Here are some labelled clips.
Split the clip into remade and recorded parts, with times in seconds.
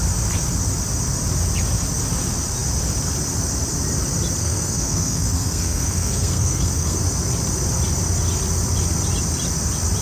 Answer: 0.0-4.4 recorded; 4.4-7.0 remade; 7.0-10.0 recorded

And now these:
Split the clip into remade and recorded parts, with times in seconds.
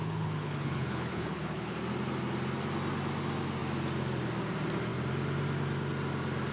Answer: 0.0-1.8 remade; 1.8-6.5 recorded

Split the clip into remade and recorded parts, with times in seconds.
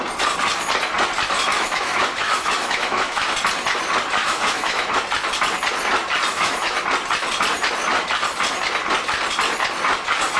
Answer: 0.0-1.5 recorded; 1.5-3.3 remade; 3.3-4.2 recorded; 4.2-5.0 remade; 5.0-6.3 recorded; 6.3-6.8 remade; 6.8-10.4 recorded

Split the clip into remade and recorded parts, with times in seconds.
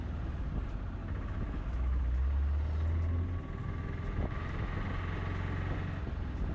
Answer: 0.0-1.0 recorded; 1.0-2.0 remade; 2.0-3.6 recorded; 3.6-4.8 remade; 4.8-6.5 recorded